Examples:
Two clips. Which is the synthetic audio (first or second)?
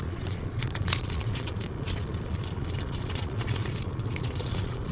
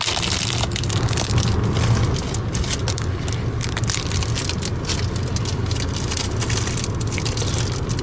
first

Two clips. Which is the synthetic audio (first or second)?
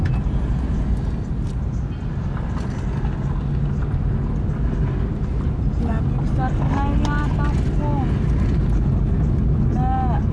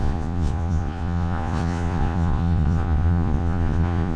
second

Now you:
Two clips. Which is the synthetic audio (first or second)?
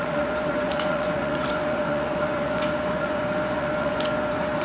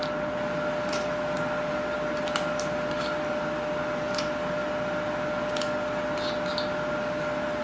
first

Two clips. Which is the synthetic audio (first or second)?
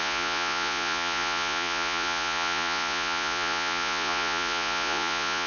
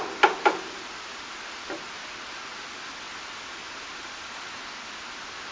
first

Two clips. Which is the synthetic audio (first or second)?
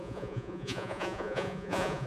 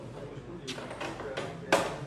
first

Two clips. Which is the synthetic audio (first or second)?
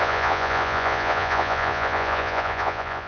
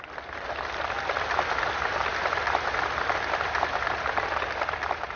first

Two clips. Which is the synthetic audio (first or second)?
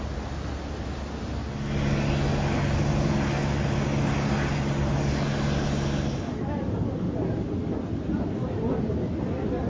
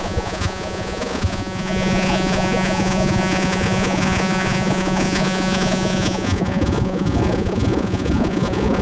second